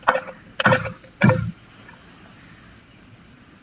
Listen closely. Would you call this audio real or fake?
real